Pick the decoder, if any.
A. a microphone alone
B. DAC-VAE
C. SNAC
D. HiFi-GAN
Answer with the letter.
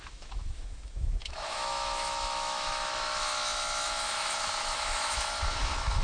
B